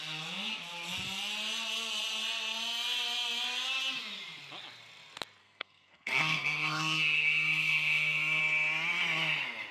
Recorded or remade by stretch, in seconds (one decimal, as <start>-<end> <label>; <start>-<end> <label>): 0.0-5.4 recorded; 5.4-8.4 remade; 8.4-9.7 recorded